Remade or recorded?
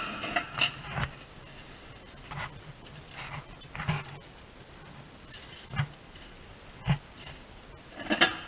recorded